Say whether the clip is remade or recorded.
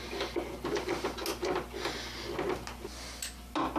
recorded